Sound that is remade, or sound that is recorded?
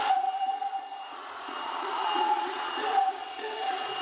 remade